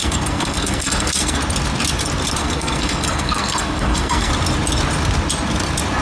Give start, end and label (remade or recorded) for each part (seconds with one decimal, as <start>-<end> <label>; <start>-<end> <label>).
0.0-1.4 remade; 1.4-2.4 recorded; 2.4-4.3 remade; 4.3-6.0 recorded

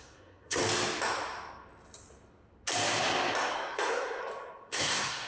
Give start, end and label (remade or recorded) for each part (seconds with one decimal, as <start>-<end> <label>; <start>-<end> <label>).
0.0-0.6 remade; 0.6-3.5 recorded; 3.5-4.2 remade; 4.2-4.7 recorded; 4.7-5.3 remade